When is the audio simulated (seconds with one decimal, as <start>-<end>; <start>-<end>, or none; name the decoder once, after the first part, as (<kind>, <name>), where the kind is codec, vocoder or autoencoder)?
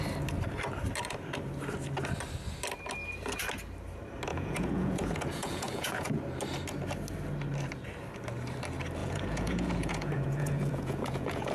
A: 4.3-6.2 (vocoder, Vocos); 9.0-11.5